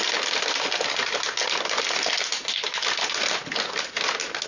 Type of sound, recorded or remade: recorded